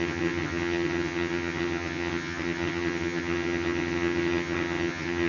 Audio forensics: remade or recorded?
remade